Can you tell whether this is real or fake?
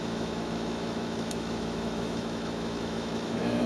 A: fake